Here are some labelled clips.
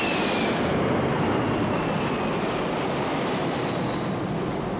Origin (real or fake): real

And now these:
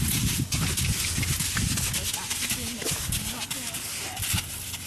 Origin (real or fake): real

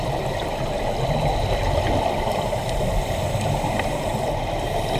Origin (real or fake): real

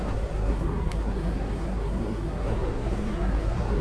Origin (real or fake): fake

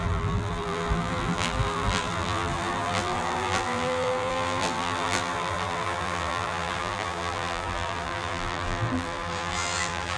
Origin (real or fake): fake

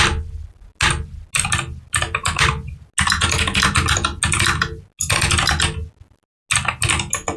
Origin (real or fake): real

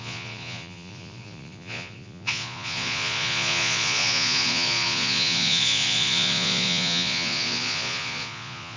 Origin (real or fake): fake